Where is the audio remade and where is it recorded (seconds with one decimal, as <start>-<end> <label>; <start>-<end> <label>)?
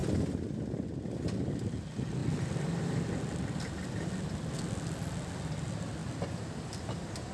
0.0-7.3 recorded